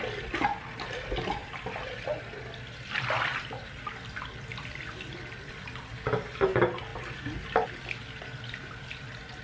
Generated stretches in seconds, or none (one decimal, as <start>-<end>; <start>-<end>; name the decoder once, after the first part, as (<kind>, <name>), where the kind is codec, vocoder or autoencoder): none